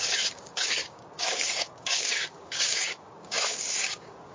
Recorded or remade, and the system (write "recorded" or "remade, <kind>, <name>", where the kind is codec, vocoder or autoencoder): remade, codec, DAC